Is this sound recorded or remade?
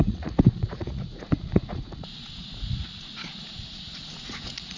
remade